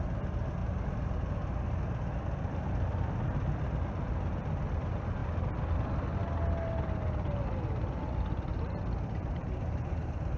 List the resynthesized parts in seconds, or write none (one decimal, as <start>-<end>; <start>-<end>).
none